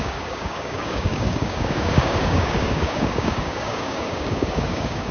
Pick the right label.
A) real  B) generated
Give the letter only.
B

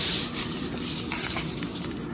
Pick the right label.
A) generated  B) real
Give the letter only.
B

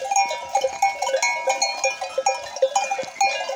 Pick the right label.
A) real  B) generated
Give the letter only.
A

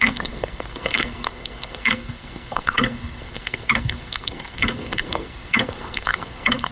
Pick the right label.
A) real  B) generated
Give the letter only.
B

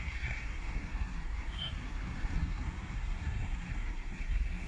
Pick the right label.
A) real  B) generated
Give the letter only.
B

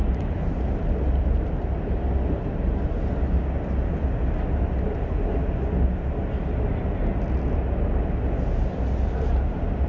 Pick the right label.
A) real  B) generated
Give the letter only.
A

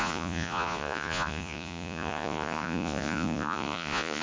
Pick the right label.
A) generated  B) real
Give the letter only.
A